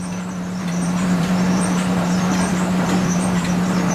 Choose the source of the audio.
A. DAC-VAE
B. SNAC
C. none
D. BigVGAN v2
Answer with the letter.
D